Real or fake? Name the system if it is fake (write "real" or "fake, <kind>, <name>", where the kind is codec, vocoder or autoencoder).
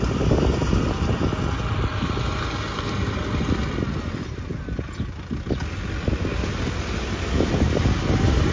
real